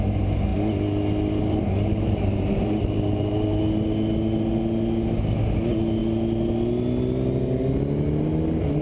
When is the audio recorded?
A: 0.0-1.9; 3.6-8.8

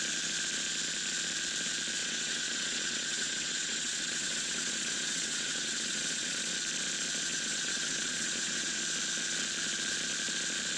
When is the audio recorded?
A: 0.0-2.0; 6.5-7.3; 8.8-10.8

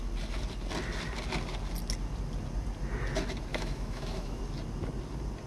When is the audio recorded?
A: 0.0-3.5; 4.4-5.5

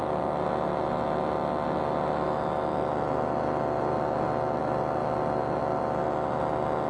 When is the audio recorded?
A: 0.0-6.9

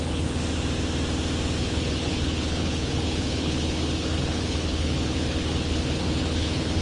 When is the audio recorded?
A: 0.4-1.6

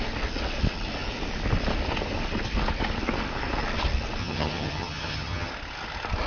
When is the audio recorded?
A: 0.0-4.2; 5.5-6.3

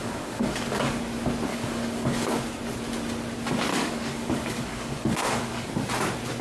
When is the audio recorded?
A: 1.0-1.5; 2.6-3.7; 5.7-6.4